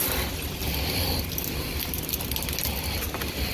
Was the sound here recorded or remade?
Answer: recorded